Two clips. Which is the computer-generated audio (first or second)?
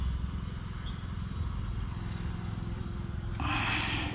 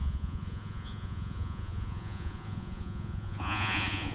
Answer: second